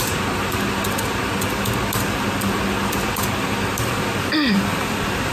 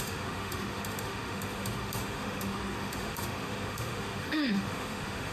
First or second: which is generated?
second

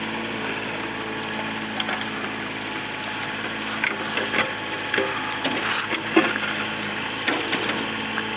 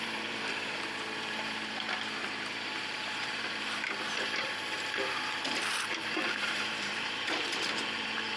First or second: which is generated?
second